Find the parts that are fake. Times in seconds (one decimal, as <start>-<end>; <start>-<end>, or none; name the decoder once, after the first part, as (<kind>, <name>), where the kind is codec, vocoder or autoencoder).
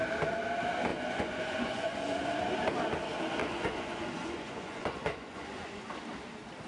0.9-2.3 (vocoder, Vocos); 3.4-5.9